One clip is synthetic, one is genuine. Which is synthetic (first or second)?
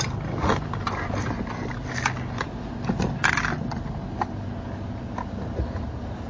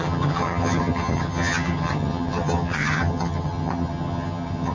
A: second